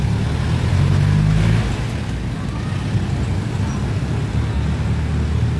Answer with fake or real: real